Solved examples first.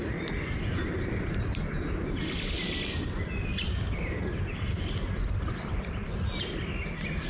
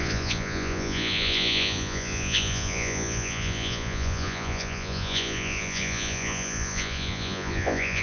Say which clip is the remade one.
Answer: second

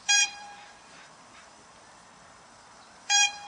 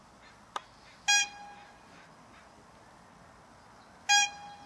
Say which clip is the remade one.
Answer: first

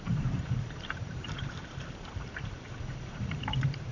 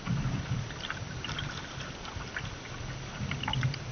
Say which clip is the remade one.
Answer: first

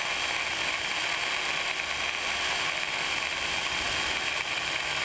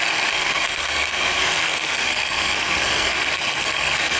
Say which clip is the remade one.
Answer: second